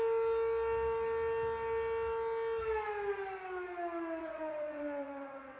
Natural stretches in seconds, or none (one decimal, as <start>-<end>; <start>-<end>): 0.0-4.2